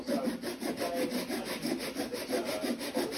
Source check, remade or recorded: recorded